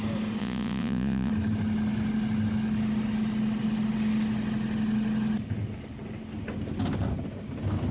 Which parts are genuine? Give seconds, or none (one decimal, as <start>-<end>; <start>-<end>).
0.0-0.4; 1.3-7.9